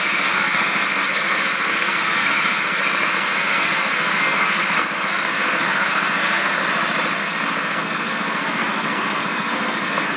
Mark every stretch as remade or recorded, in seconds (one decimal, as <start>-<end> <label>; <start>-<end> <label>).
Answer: 0.0-6.6 remade; 6.6-7.2 recorded; 7.2-10.2 remade